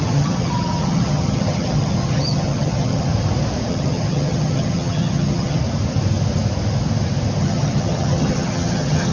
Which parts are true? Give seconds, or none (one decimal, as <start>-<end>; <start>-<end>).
3.1-3.7; 5.6-7.4